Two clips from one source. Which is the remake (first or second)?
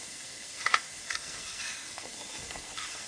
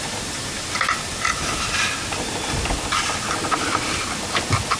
first